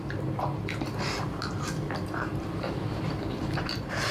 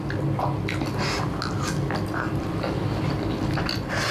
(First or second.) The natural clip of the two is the second